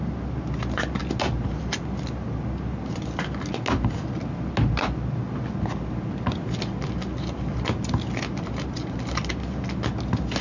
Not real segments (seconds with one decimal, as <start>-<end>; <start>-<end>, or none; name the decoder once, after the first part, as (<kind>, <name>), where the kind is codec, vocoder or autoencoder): none